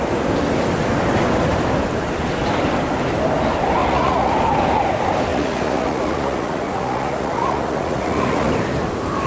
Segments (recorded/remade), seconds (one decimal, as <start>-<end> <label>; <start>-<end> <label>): 0.0-3.8 recorded; 3.8-4.3 remade; 4.3-5.3 recorded; 5.3-8.5 remade; 8.5-9.3 recorded